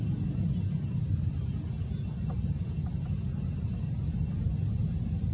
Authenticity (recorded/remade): recorded